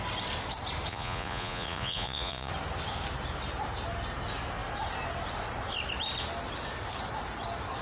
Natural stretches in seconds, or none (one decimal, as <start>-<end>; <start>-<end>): 0.0-0.9; 2.5-7.8